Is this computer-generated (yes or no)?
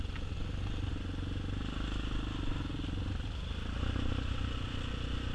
no